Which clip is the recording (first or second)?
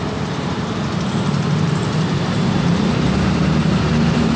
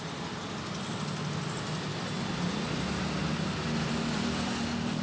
second